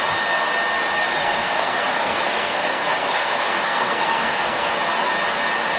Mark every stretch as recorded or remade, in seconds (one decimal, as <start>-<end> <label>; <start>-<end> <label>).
0.0-1.2 recorded; 1.2-4.7 remade; 4.7-5.8 recorded

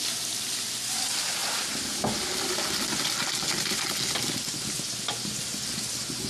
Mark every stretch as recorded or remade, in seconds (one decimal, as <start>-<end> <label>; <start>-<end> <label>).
0.0-6.3 recorded

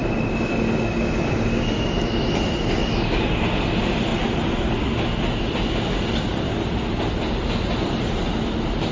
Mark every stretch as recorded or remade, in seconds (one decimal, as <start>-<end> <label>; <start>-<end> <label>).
0.0-8.9 recorded

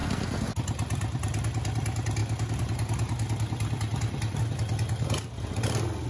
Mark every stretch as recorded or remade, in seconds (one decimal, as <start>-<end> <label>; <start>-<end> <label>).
0.0-0.5 remade; 0.5-6.1 recorded

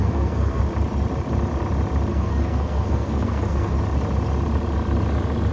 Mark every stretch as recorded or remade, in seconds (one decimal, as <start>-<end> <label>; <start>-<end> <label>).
0.0-0.6 remade; 0.6-2.1 recorded; 2.1-3.8 remade; 3.8-5.5 recorded

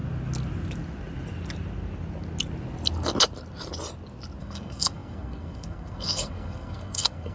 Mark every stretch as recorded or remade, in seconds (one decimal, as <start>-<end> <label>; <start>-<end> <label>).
0.0-4.4 recorded; 4.4-7.3 remade